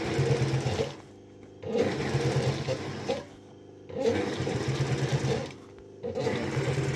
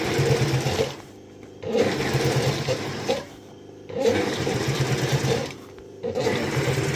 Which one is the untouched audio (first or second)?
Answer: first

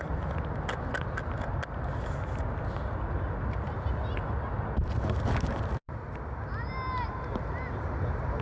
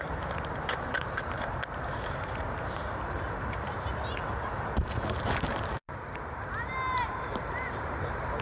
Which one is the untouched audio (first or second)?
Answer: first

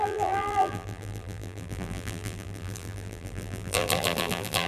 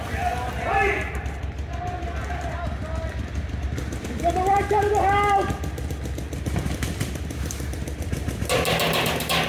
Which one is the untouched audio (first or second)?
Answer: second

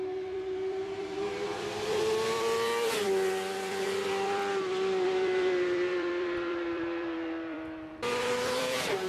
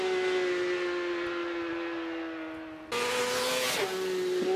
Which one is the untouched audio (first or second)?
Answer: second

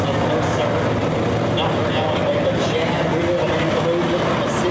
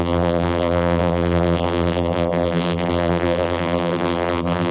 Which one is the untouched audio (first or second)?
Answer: first